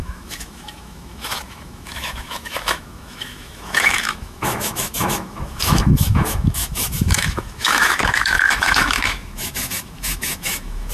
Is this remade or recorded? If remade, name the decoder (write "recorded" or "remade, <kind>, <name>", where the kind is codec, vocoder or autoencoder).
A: remade, autoencoder, DAC-VAE